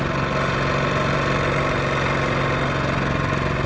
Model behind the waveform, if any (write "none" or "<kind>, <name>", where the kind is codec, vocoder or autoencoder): none